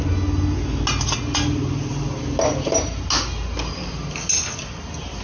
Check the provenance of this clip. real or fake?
real